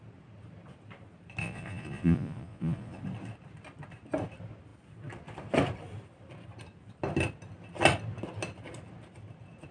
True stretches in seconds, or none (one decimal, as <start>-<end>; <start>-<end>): 0.0-1.4; 3.0-9.7